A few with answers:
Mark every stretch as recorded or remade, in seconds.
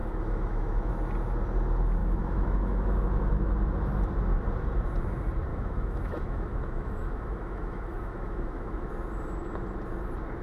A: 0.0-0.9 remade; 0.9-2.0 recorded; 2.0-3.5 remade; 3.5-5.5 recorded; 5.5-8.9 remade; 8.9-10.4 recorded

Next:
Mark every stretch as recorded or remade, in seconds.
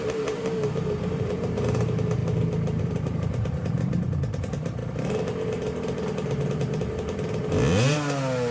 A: 0.0-2.2 remade; 2.2-2.8 recorded; 2.8-4.8 remade; 4.8-8.5 recorded